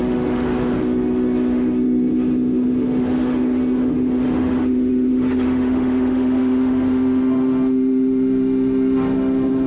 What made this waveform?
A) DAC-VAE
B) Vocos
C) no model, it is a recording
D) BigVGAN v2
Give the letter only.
A